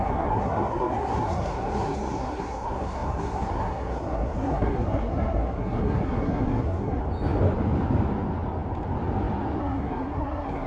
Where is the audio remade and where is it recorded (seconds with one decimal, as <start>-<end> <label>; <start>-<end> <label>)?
0.0-7.0 remade; 7.0-9.6 recorded; 9.6-10.7 remade